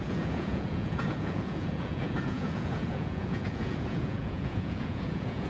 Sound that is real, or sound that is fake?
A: fake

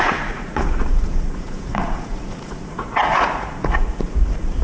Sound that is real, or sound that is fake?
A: fake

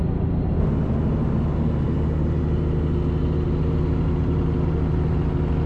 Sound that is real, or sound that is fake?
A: real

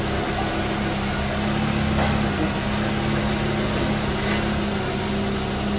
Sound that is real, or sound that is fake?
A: real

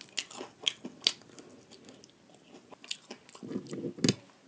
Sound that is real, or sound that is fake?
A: real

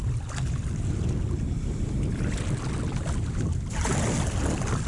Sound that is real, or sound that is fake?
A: real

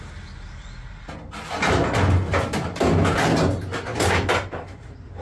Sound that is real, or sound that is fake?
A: real